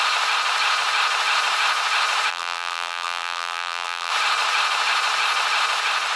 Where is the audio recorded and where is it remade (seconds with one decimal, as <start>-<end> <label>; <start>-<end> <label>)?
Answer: 0.0-2.3 recorded; 2.3-4.1 remade; 4.1-6.2 recorded